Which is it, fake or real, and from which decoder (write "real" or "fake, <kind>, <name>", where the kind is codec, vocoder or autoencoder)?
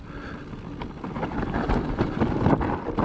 real